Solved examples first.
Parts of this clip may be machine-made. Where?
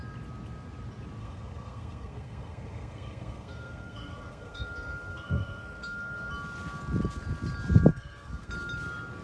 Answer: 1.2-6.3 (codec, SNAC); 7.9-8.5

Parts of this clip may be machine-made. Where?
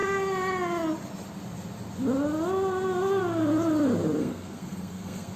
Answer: 4.2-5.4 (codec, SNAC)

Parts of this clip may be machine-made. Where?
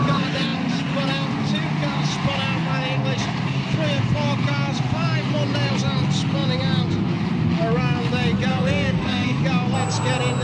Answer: 8.5-9.4 (codec, SNAC)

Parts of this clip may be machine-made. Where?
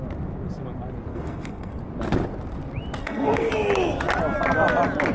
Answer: 1.1-1.8 (codec, SNAC); 3.0-3.5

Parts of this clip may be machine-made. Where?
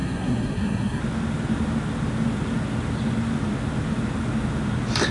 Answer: 0.0-1.0 (codec, SNAC)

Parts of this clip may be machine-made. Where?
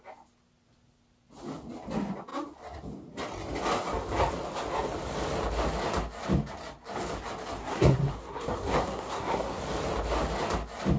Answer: 7.6-9.6 (codec, SNAC)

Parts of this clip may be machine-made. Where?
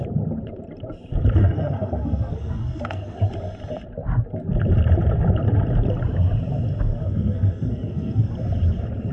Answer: 1.4-3.2 (codec, SNAC); 6.9-8.3